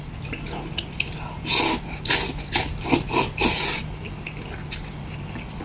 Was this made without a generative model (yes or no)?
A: yes